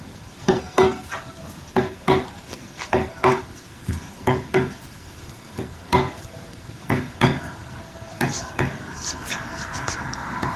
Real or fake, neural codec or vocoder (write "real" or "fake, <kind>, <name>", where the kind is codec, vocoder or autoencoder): fake, codec, SNAC